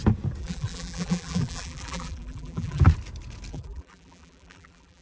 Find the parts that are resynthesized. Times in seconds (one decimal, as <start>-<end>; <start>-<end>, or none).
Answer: 0.4-2.8; 3.5-5.0